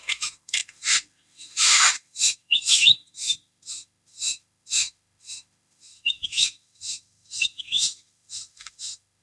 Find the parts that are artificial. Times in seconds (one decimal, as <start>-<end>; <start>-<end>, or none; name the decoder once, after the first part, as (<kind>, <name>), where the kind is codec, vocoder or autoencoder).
0.0-9.2 (autoencoder, DAC-VAE)

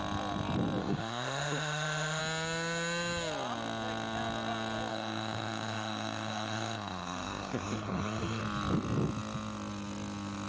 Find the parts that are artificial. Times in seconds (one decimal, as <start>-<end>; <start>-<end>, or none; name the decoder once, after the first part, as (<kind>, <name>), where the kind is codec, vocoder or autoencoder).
0.8-2.2 (autoencoder, DAC-VAE); 4.9-8.4

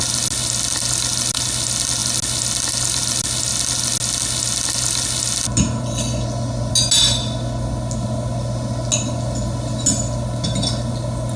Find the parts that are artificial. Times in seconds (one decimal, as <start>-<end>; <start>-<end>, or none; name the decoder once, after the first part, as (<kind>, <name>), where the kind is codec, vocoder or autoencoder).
none

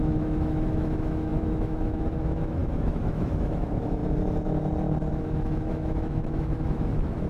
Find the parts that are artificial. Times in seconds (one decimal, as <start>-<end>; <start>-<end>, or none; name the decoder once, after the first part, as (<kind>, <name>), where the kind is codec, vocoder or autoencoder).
0.0-4.0 (autoencoder, DAC-VAE); 5.1-7.3